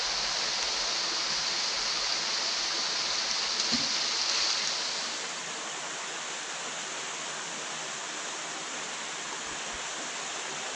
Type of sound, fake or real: real